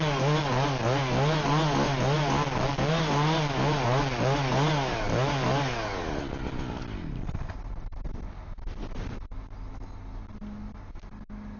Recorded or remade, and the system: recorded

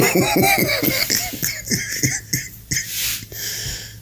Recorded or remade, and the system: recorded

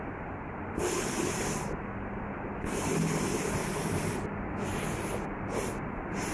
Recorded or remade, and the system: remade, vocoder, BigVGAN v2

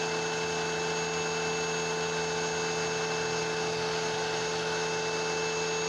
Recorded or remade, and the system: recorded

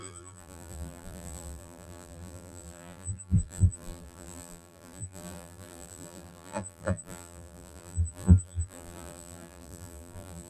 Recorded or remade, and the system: remade, vocoder, BigVGAN v2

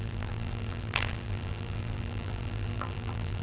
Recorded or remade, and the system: remade, vocoder, BigVGAN v2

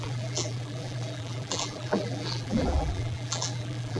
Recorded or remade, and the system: remade, vocoder, BigVGAN v2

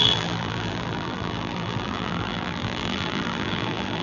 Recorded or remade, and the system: remade, vocoder, BigVGAN v2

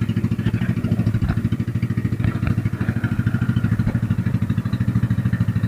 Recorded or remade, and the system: recorded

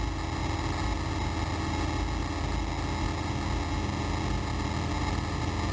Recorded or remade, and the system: recorded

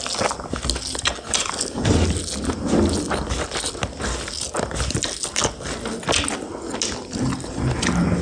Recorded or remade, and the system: recorded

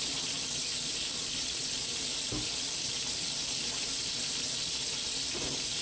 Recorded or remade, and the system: remade, vocoder, BigVGAN v2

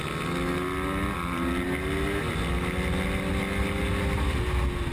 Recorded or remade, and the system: recorded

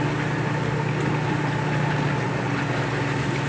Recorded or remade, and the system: recorded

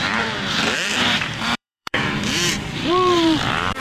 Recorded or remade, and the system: remade, vocoder, BigVGAN v2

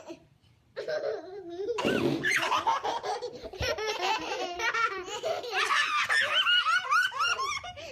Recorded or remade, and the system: remade, vocoder, BigVGAN v2